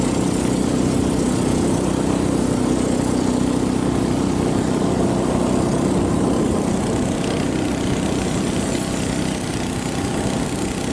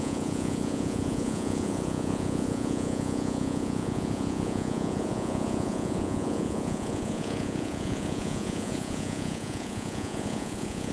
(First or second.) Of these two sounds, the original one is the first